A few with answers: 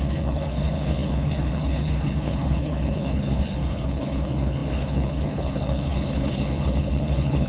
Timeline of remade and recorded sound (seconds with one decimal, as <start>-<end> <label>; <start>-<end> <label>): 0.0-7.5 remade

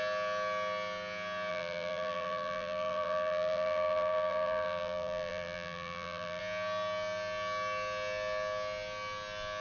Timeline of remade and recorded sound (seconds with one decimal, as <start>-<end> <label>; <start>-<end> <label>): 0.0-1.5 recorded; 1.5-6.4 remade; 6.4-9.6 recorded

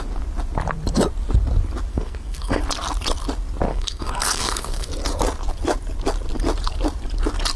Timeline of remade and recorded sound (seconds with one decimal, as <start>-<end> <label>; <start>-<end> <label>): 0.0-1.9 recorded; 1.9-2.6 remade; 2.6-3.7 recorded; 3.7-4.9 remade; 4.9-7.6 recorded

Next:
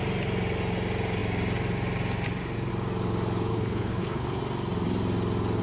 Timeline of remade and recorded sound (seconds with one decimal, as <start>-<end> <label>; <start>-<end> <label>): 0.0-3.5 recorded; 3.5-4.4 remade; 4.4-5.6 recorded

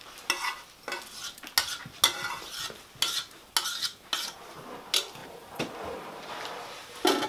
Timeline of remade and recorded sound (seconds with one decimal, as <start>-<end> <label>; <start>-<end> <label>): 0.0-5.2 recorded; 5.2-6.3 remade; 6.3-7.3 recorded